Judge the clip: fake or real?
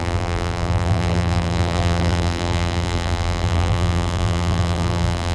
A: fake